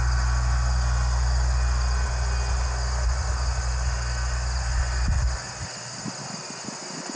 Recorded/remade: recorded